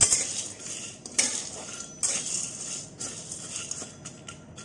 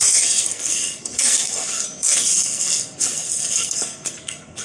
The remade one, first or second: second